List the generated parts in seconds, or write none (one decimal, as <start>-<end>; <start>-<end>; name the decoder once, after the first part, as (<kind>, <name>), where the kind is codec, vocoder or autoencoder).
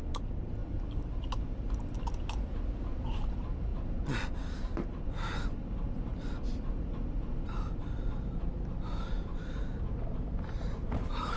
none